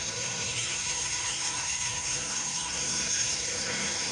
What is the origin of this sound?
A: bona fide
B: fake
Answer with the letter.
B